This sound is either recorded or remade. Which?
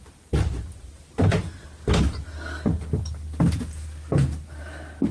recorded